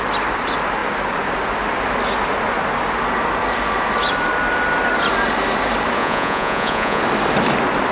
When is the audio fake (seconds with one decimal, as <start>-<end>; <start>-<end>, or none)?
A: 6.0-7.0